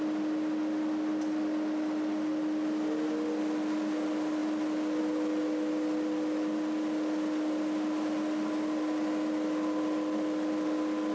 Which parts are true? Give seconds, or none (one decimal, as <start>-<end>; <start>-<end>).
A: 0.0-11.1